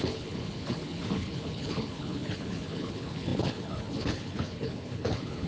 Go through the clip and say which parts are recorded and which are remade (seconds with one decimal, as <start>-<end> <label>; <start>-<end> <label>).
0.0-5.5 remade

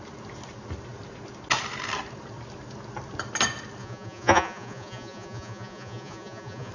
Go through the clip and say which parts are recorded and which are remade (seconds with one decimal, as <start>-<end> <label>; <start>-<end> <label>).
0.0-3.8 recorded; 3.8-6.7 remade

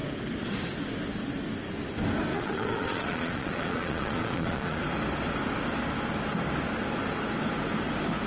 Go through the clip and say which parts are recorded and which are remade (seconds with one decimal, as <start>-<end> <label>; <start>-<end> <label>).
0.0-2.3 recorded; 2.3-4.8 remade; 4.8-8.3 recorded

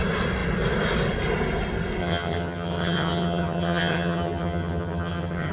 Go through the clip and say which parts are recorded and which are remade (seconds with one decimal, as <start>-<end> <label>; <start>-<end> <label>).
0.0-2.0 recorded; 2.0-5.5 remade

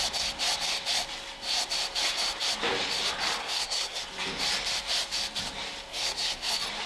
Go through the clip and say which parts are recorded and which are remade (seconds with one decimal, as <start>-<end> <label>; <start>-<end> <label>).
0.0-3.4 recorded; 3.4-4.0 remade; 4.0-5.9 recorded; 5.9-6.5 remade; 6.5-6.9 recorded

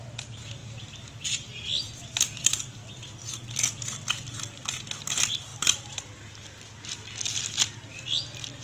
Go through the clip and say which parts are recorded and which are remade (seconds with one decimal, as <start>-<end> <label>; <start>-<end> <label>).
0.0-8.6 recorded